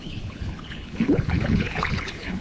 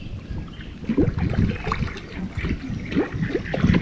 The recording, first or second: second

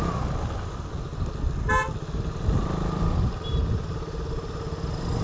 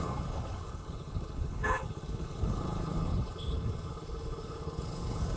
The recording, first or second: first